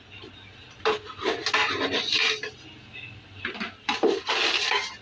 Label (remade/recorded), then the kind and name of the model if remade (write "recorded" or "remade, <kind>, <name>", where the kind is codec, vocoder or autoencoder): recorded